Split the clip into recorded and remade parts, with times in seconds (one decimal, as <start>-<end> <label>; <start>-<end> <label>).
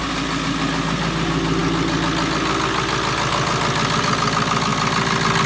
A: 0.0-5.5 recorded